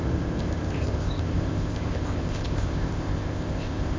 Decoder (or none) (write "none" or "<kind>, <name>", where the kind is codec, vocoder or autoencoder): codec, ZipCodec